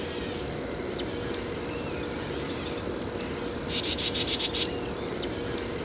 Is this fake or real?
real